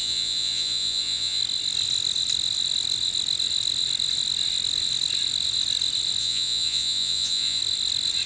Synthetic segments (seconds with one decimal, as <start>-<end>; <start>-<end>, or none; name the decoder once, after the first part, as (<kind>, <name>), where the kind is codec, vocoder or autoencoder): 0.0-1.4 (vocoder, Vocos); 6.2-7.6